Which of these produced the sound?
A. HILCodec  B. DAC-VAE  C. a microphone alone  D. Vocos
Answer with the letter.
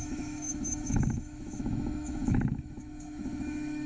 B